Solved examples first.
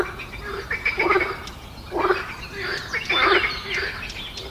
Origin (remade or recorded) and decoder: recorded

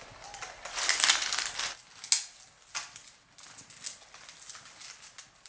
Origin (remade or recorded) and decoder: recorded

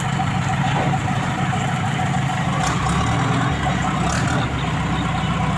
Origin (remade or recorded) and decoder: recorded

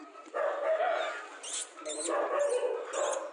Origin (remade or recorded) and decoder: recorded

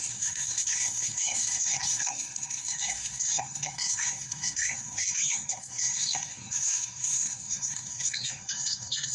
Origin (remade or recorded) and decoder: remade, codec, SNAC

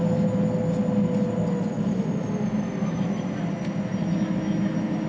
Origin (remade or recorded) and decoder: recorded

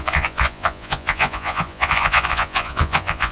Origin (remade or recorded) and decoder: remade, vocoder, Vocos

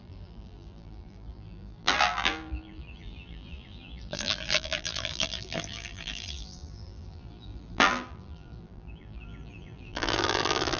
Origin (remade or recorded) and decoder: remade, vocoder, BigVGAN v2